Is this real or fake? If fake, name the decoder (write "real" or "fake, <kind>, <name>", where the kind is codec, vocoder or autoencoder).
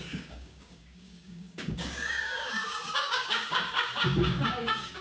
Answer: fake, codec, DAC